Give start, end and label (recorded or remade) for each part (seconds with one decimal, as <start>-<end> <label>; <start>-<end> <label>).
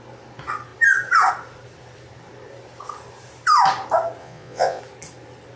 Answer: 0.0-4.2 recorded; 4.2-4.8 remade; 4.8-5.6 recorded